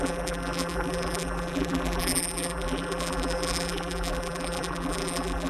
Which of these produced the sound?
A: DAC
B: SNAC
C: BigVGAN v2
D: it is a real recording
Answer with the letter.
C